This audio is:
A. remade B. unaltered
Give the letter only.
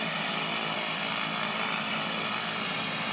B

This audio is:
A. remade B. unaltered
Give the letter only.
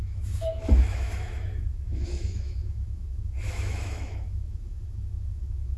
A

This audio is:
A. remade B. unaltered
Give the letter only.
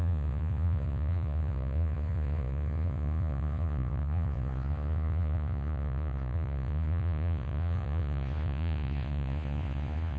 A